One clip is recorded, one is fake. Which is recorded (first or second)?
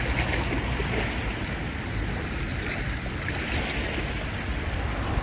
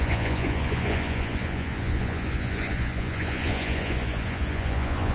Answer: first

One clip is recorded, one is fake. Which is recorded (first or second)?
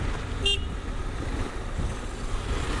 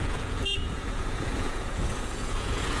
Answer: first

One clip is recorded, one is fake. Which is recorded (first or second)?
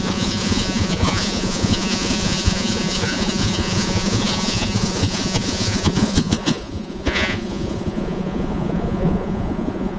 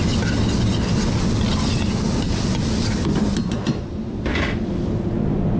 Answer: second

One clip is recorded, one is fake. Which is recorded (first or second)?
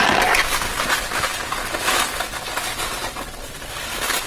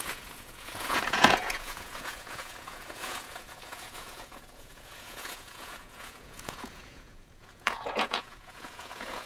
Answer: first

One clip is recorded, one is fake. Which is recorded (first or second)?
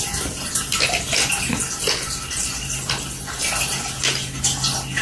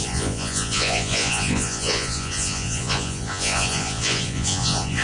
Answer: first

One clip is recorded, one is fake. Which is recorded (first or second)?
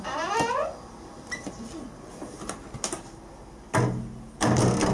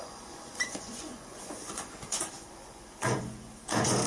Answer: first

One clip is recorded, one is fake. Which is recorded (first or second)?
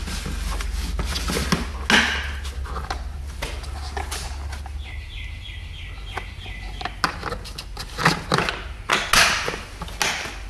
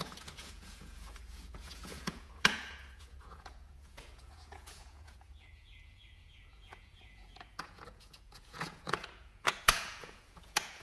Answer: first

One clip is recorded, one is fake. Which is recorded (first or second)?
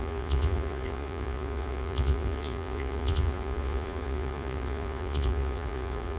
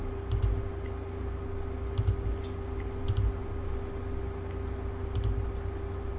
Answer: second